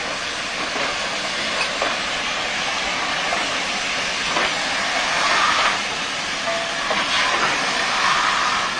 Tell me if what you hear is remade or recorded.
recorded